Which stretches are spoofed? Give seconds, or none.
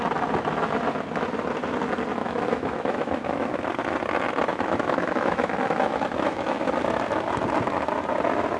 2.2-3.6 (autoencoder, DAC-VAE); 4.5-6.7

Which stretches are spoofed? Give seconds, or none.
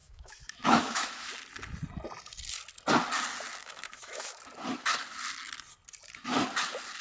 0.0-1.3 (autoencoder, DAC-VAE); 3.6-4.4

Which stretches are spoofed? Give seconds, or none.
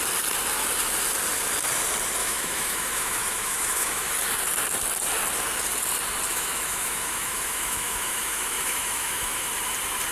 2.2-4.1 (autoencoder, DAC-VAE); 6.3-9.5